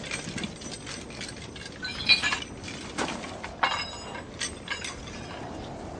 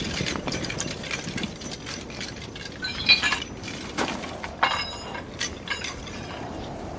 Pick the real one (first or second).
first